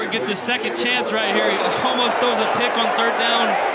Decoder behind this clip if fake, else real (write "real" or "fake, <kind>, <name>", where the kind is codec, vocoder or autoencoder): real